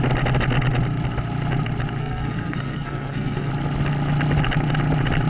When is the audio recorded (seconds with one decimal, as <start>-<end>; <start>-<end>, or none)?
0.0-2.0; 3.5-5.3